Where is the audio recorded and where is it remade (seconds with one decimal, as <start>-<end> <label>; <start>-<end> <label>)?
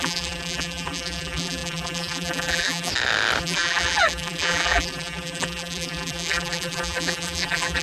0.0-2.9 remade; 2.9-3.4 recorded; 3.4-7.8 remade